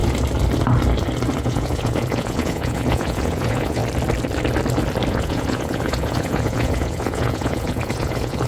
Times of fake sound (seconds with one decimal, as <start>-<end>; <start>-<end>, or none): 1.4-3.8; 5.1-8.5